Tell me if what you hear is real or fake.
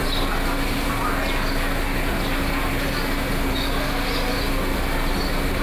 real